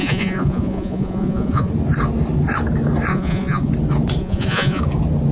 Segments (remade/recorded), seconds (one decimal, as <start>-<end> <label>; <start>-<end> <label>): 0.0-1.7 remade; 1.7-3.1 recorded; 3.1-3.7 remade; 3.7-4.2 recorded; 4.2-4.8 remade; 4.8-5.3 recorded